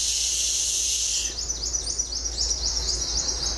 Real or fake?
real